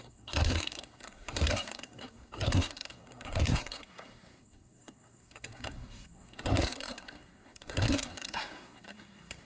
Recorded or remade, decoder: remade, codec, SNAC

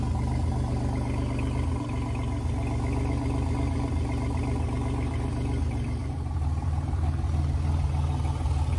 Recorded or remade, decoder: recorded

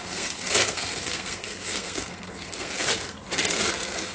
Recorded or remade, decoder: remade, codec, SNAC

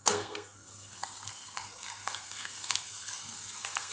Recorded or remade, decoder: remade, codec, SNAC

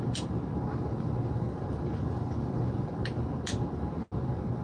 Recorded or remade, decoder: recorded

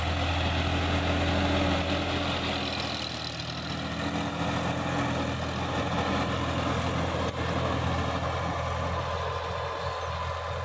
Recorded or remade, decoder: recorded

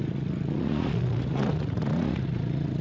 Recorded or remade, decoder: remade, vocoder, Vocos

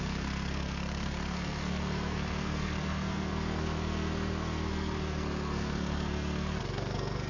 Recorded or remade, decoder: remade, codec, SNAC